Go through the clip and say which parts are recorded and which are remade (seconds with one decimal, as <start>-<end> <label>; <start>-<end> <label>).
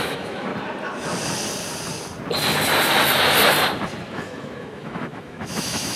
0.0-0.5 remade; 0.5-4.1 recorded; 4.1-6.0 remade